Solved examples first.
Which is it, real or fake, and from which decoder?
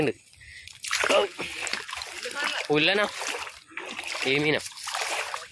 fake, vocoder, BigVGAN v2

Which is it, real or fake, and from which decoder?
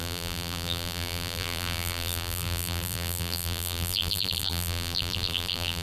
fake, vocoder, BigVGAN v2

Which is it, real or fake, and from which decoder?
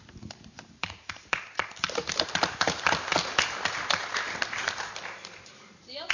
fake, vocoder, BigVGAN v2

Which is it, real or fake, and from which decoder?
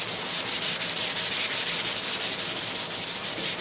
real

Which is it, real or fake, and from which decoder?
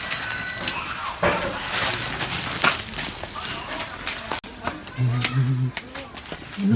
real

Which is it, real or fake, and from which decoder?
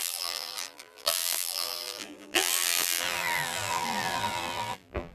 fake, vocoder, BigVGAN v2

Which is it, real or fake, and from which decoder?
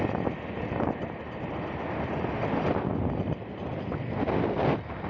real